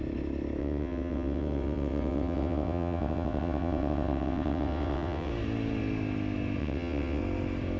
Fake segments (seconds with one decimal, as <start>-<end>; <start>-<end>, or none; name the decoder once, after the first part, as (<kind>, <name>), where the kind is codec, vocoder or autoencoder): 0.6-5.3 (vocoder, WaveNeXt); 6.6-7.2

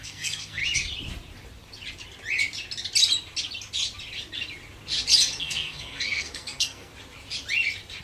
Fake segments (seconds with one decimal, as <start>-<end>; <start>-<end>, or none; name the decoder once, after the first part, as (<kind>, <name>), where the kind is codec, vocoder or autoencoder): 0.0-0.6 (codec, SNAC); 5.4-6.9

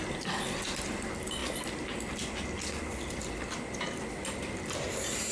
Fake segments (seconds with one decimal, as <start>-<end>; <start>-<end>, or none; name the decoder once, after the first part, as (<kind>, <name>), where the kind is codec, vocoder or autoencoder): none

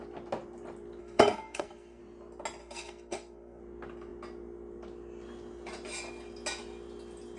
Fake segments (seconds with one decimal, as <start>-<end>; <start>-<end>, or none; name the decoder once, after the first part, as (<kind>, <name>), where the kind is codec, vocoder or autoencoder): 1.0-2.0 (codec, SNAC); 2.6-3.6

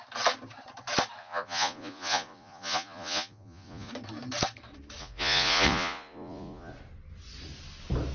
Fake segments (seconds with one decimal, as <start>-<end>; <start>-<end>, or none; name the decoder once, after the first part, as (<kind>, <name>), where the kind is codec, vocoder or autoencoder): 1.2-3.9 (vocoder, Vocos); 5.0-6.7